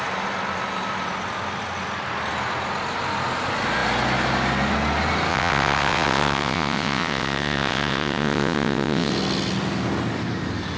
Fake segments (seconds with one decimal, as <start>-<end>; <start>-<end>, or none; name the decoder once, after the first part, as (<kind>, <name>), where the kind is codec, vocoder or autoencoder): 5.3-9.1 (vocoder, WaveNeXt)